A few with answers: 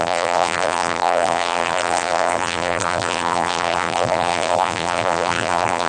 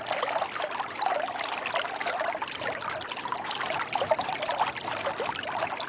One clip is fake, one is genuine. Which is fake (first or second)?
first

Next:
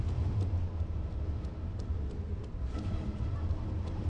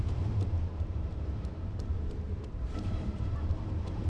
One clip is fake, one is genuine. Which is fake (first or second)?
second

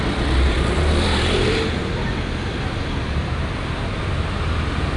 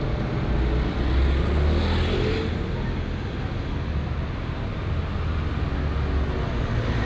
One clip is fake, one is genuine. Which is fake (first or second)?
first